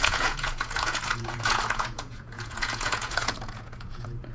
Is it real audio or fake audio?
fake